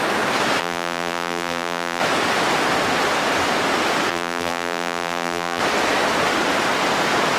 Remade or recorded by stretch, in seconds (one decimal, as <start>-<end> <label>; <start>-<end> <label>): 0.0-0.6 recorded; 0.6-2.0 remade; 2.0-4.1 recorded; 4.1-5.6 remade; 5.6-7.4 recorded

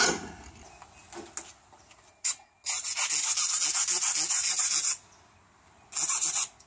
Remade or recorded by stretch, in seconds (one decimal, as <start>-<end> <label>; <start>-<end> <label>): 0.0-6.7 recorded

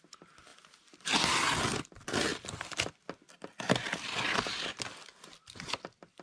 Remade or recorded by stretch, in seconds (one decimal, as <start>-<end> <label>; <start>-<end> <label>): 0.0-2.3 recorded; 2.3-2.9 remade; 2.9-6.2 recorded

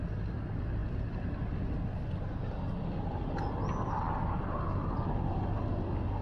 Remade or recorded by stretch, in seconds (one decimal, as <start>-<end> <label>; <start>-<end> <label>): 0.0-6.2 recorded

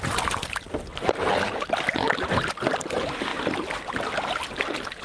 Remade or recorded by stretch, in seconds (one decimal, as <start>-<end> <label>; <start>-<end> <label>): 0.0-0.9 remade; 0.9-2.5 recorded; 2.5-5.0 remade

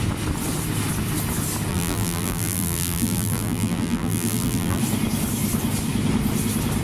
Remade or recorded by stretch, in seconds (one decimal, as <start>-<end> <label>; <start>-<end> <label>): 0.0-1.7 recorded; 1.7-4.8 remade; 4.8-6.8 recorded